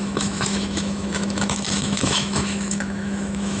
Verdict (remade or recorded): remade